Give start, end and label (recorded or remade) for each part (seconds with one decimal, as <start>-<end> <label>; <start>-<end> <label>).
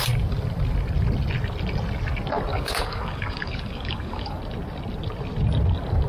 0.0-2.5 recorded; 2.5-4.4 remade; 4.4-6.1 recorded